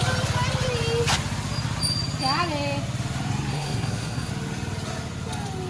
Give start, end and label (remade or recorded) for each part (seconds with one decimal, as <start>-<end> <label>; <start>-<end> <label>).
0.0-3.5 recorded; 3.5-4.3 remade; 4.3-5.7 recorded